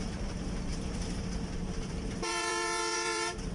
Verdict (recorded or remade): remade